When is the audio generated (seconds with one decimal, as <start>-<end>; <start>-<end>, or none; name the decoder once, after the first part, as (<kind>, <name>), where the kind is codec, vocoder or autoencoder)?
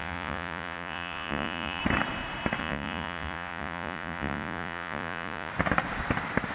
0.0-1.8 (vocoder, Vocos); 2.6-5.5